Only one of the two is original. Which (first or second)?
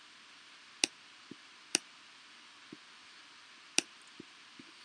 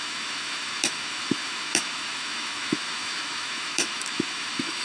first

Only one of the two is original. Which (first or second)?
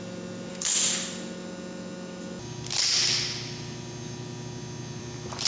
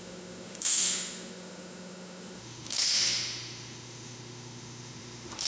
first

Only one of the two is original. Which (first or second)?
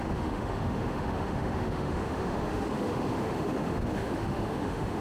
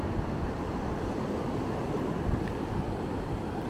second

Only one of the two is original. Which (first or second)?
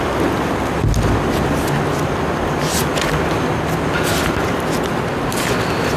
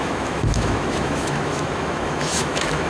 first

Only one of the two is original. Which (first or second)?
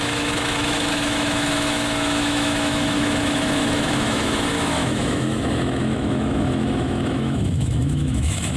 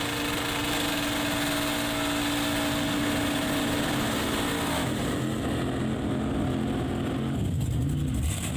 second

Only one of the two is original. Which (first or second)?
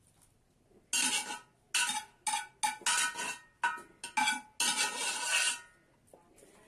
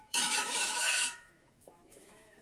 first